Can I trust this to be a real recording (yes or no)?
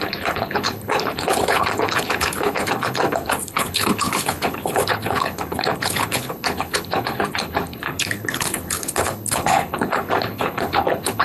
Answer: no